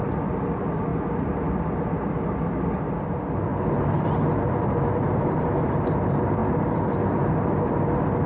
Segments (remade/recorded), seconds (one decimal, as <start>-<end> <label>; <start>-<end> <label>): 0.0-8.3 recorded